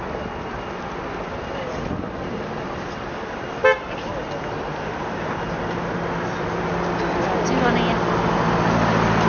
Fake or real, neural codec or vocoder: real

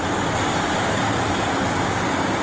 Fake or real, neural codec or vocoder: real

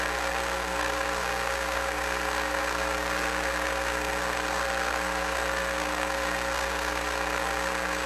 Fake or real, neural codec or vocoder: fake, codec, SNAC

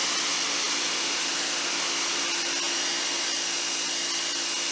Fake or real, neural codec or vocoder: real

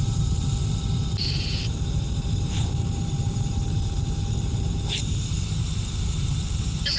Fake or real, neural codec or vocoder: fake, vocoder, BigVGAN v2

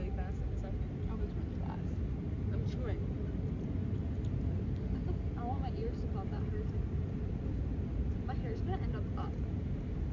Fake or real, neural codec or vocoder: real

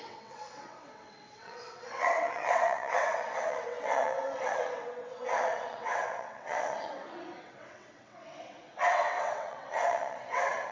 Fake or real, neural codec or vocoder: fake, vocoder, WaveNeXt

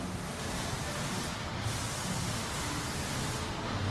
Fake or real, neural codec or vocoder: real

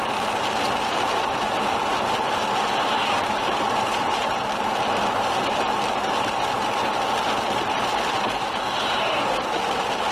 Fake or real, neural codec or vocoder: real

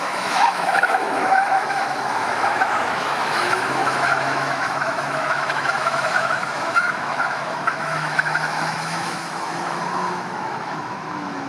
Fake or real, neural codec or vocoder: fake, autoencoder, DAC-VAE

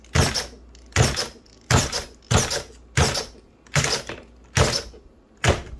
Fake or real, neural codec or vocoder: real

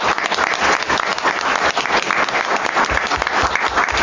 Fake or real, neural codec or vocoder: real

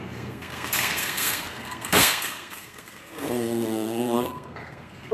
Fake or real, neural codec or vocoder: fake, codec, SNAC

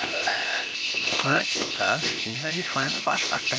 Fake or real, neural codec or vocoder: fake, codec, ZipCodec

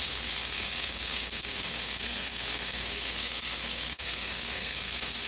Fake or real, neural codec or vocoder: fake, codec, SNAC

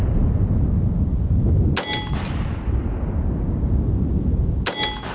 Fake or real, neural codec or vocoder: real